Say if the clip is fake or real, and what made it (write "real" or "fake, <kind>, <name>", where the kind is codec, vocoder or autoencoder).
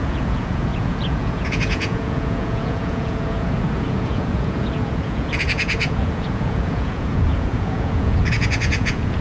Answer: fake, vocoder, Vocos